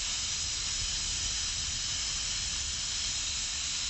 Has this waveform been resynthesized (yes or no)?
no